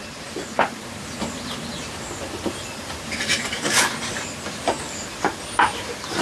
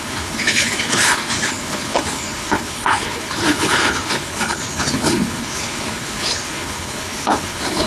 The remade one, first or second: second